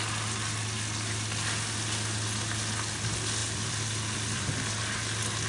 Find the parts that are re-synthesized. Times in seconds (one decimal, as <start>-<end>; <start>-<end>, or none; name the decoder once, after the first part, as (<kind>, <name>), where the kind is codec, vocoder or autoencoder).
3.4-4.5 (vocoder, BigVGAN v2)